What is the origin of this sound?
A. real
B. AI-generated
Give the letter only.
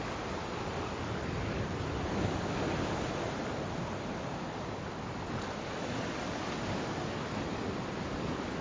A